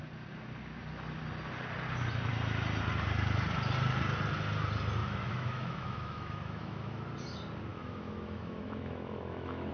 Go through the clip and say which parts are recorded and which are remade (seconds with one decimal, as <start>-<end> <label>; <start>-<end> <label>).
0.0-5.0 recorded; 5.0-7.0 remade; 7.0-7.7 recorded; 7.7-9.7 remade